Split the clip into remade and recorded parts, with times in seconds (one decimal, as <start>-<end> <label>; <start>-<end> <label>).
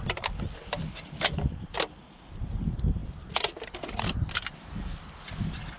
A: 0.0-5.8 recorded